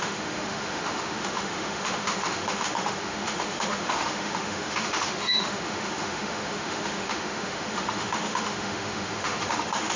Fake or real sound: fake